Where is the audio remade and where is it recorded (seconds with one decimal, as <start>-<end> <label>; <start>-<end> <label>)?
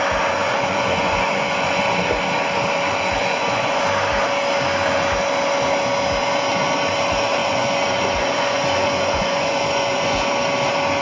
0.0-0.4 recorded; 0.4-1.8 remade; 1.8-3.2 recorded; 3.2-3.8 remade; 3.8-7.4 recorded; 7.4-10.3 remade; 10.3-11.0 recorded